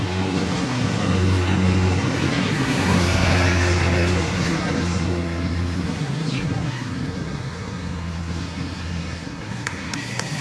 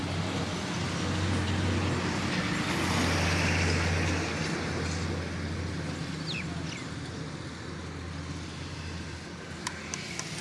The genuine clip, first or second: second